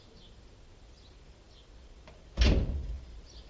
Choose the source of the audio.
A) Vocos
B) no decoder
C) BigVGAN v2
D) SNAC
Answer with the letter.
B